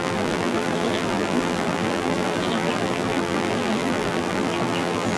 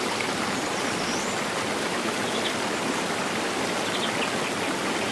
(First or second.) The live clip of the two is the second